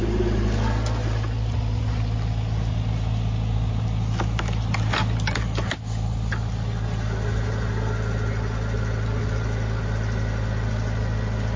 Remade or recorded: recorded